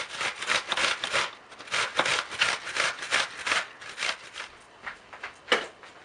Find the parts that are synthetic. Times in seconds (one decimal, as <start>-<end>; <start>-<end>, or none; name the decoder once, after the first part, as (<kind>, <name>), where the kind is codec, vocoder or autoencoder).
none